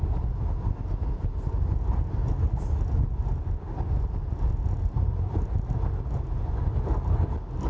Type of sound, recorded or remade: recorded